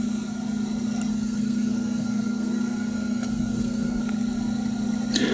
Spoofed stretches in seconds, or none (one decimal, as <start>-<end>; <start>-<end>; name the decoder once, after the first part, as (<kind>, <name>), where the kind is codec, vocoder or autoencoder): 1.1-4.0 (codec, SNAC)